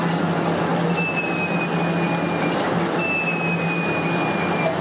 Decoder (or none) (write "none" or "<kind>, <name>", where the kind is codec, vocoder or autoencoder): none